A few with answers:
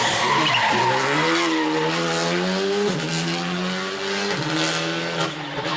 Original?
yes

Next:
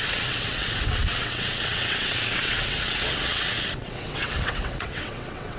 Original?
no